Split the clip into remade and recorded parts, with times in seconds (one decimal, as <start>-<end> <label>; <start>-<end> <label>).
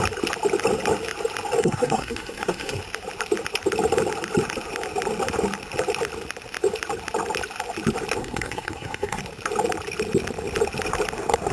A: 0.0-1.6 recorded; 1.6-2.8 remade; 2.8-8.2 recorded; 8.2-9.2 remade; 9.2-11.5 recorded